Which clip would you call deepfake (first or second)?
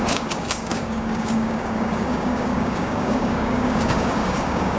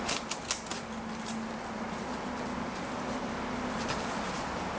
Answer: first